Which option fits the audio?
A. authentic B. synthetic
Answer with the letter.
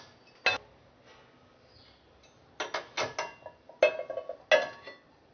A